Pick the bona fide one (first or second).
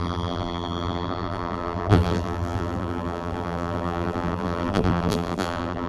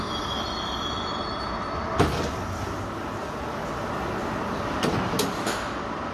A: second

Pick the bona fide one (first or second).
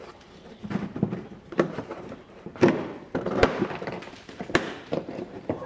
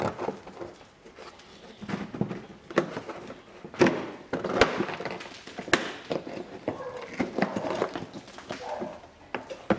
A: second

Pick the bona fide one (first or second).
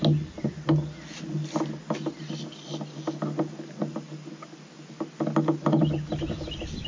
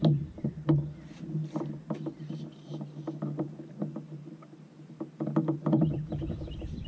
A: first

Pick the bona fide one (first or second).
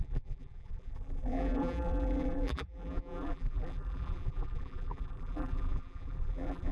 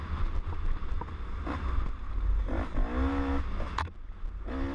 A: second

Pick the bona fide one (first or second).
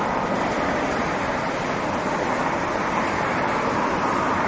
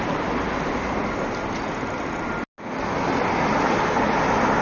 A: second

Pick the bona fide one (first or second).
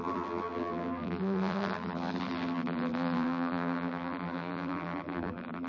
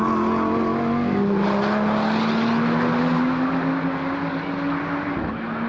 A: second